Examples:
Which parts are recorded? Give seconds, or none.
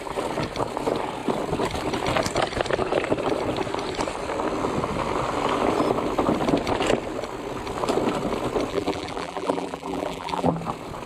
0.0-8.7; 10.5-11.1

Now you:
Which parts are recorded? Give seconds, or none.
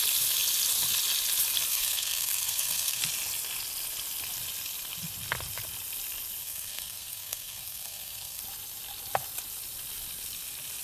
0.0-1.7; 3.0-6.4; 8.4-10.8